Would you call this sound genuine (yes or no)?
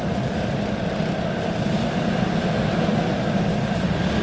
yes